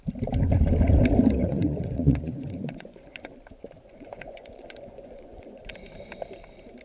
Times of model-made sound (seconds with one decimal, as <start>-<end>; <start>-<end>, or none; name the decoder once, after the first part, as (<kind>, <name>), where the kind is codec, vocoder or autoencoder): 1.4-3.3 (vocoder, Vocos); 3.9-5.7